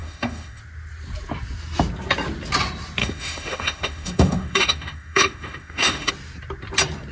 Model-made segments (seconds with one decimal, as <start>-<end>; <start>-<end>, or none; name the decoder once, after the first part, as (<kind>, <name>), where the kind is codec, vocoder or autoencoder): 0.0-0.6 (autoencoder, DAC-VAE); 3.0-6.1